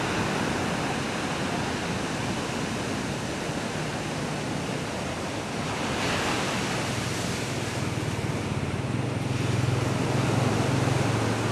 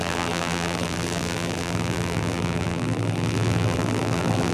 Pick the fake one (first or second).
second